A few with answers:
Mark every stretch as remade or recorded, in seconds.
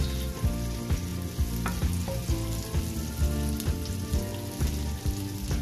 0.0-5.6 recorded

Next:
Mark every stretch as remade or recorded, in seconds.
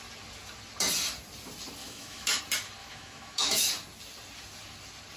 0.0-1.8 recorded; 1.8-2.4 remade; 2.4-2.8 recorded; 2.8-3.7 remade; 3.7-5.2 recorded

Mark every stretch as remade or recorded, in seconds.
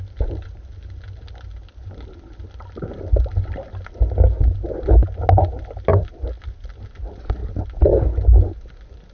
0.0-9.1 recorded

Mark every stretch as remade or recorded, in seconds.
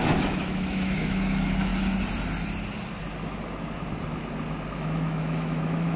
0.0-1.7 remade; 1.7-4.7 recorded; 4.7-6.0 remade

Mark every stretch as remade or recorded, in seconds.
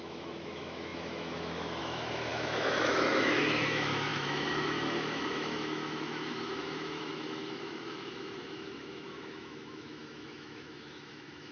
0.0-11.5 remade